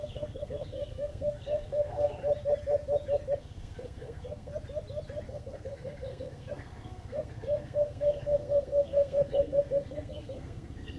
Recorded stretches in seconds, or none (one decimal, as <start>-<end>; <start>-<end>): 2.2-3.4; 4.5-5.3